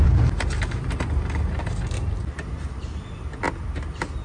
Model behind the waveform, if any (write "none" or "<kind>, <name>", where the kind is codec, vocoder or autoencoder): none